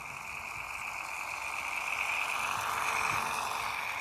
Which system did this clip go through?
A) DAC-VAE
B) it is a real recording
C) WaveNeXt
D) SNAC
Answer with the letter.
B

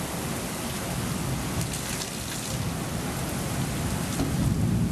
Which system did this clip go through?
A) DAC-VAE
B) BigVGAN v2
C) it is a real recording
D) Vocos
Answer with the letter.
C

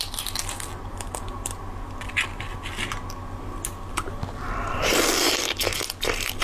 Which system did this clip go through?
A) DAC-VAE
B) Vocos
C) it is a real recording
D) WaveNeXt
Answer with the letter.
C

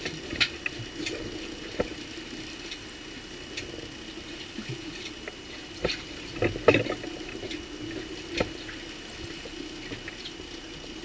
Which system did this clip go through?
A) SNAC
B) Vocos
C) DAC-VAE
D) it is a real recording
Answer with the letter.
D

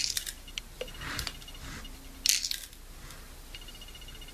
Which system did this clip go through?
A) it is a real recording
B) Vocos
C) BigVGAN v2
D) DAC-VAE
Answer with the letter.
A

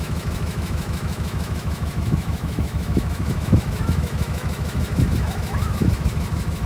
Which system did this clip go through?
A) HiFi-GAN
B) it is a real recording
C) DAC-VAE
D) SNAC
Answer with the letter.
C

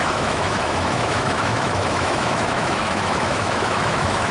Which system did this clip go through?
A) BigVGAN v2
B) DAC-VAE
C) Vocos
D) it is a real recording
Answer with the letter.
B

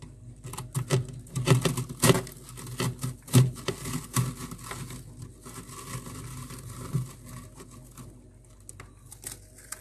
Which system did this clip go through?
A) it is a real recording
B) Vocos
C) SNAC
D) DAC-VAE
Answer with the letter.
A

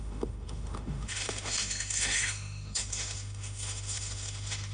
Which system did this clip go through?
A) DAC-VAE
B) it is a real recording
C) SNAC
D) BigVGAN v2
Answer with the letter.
A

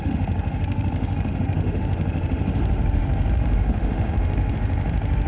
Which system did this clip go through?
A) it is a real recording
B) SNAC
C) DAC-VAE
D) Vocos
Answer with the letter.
C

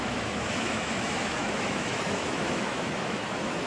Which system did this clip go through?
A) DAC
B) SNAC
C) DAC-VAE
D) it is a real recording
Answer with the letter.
C